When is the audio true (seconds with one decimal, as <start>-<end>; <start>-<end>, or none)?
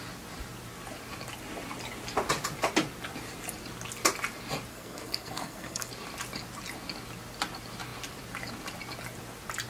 0.0-4.7; 5.9-9.7